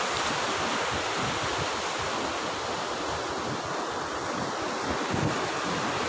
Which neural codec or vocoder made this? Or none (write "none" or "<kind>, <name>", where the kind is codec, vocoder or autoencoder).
none